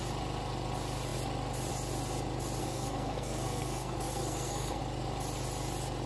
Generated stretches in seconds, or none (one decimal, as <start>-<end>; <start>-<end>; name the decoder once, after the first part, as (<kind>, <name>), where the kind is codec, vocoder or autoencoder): 2.6-4.8 (codec, SNAC)